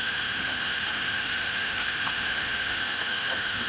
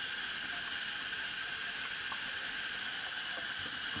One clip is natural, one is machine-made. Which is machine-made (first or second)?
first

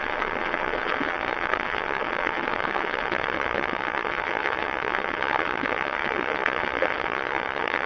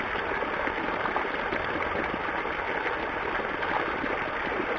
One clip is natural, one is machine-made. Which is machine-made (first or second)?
first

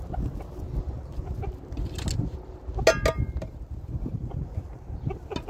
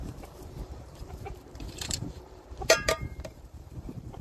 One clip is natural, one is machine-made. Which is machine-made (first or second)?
second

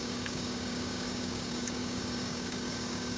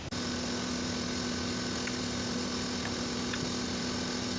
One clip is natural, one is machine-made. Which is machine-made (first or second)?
first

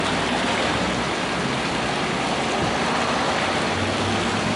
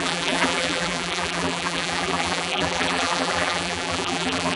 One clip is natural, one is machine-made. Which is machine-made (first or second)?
second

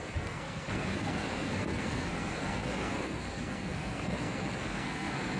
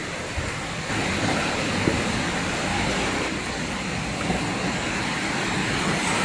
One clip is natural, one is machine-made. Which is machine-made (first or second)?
first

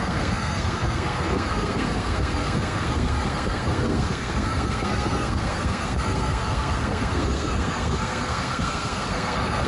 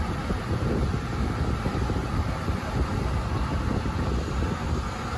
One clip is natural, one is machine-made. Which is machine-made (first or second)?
first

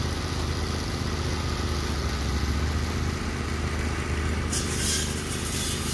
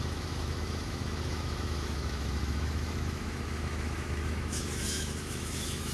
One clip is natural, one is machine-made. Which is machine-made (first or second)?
second